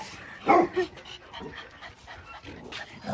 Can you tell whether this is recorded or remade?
recorded